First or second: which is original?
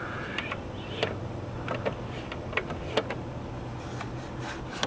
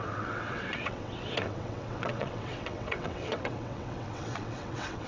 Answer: first